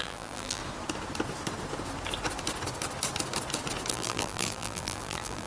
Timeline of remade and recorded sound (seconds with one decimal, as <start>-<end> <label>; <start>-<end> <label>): 0.0-0.6 remade; 0.6-3.9 recorded; 3.9-5.5 remade